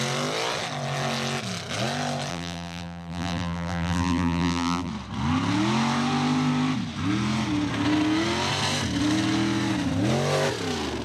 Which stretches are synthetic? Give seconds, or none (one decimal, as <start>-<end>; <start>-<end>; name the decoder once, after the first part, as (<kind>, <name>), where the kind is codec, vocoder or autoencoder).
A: 2.3-4.9 (vocoder, BigVGAN v2)